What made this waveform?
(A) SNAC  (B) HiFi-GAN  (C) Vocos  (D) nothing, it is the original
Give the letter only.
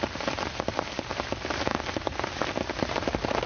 D